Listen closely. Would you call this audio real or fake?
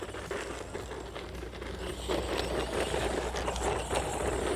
real